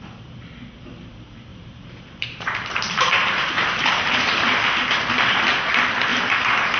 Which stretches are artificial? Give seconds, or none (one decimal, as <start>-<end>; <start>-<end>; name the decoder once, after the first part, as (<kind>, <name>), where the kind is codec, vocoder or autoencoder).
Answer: 1.5-4.6 (vocoder, BigVGAN v2); 6.1-6.8